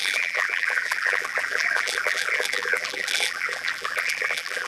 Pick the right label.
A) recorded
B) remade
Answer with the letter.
B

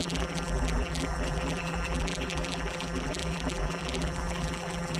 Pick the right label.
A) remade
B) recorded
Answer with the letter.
A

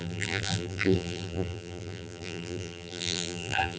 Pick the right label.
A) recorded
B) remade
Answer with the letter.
B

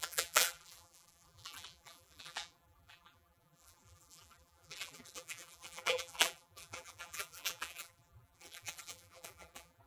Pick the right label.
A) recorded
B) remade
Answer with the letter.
B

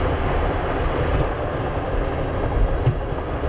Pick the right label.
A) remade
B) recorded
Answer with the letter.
B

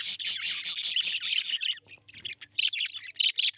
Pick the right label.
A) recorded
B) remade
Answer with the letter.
A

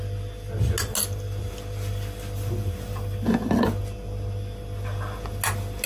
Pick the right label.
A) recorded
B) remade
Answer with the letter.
A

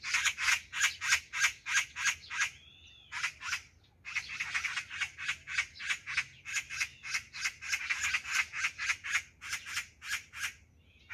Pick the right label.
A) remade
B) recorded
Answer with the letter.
B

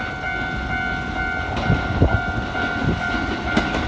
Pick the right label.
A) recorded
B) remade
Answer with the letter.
A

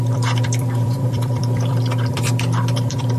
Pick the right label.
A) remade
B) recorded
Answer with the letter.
A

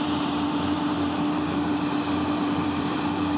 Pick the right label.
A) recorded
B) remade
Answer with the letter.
B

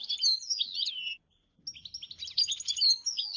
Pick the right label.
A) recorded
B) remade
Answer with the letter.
A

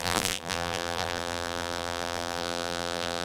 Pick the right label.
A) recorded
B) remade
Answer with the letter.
B